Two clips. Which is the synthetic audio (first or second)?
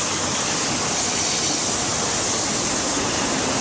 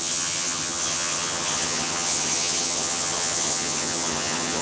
second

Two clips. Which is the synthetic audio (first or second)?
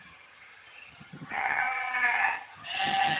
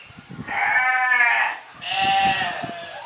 first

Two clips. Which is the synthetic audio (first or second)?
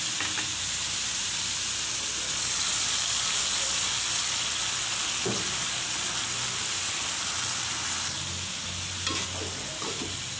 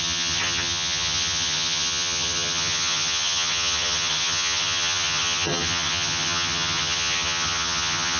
second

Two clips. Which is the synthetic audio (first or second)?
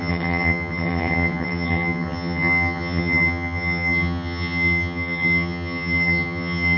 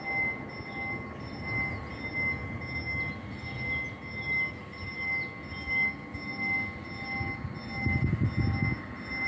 first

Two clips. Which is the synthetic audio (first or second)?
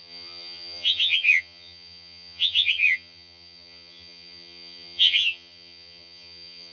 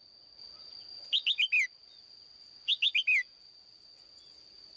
first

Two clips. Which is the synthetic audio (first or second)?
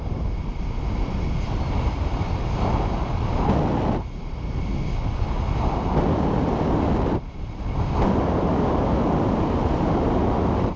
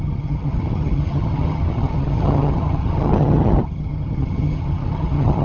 second